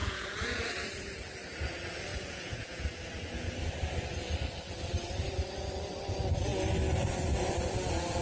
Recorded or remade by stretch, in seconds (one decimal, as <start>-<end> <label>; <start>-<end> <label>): 0.0-0.7 remade; 0.7-2.1 recorded; 2.1-3.6 remade; 3.6-8.2 recorded